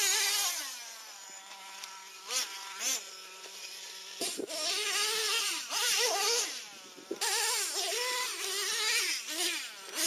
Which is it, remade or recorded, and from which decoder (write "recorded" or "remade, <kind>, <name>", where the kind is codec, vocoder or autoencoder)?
recorded